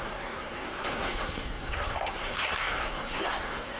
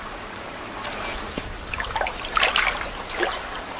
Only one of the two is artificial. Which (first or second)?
first